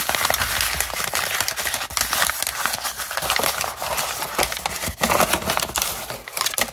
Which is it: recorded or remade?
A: recorded